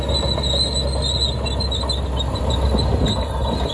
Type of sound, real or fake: real